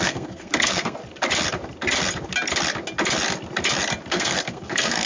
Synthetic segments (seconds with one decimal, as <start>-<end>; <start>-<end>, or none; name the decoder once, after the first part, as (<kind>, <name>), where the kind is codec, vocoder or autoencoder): 0.0-1.0 (codec, SNAC); 4.1-5.1